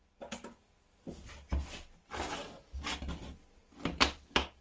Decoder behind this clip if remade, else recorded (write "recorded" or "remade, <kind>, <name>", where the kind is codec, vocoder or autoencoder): recorded